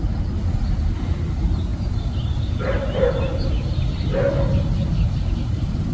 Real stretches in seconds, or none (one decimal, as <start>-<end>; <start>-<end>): 0.0-5.9